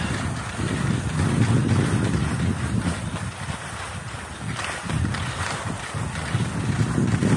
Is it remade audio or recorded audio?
recorded